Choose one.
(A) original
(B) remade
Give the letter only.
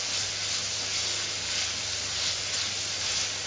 A